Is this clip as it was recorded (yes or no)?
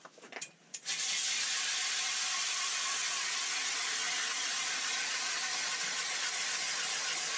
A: yes